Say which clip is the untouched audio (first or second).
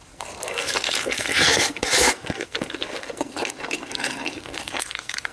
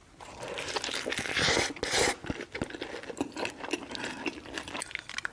second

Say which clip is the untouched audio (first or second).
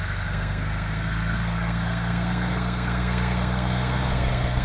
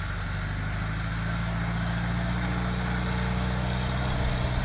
second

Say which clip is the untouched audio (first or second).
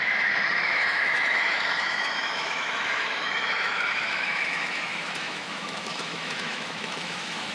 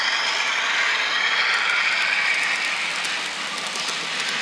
second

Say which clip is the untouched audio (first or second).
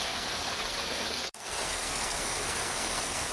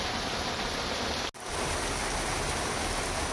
second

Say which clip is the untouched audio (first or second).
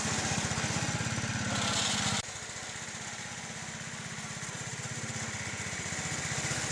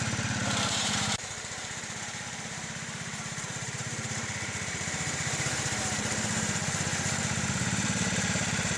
first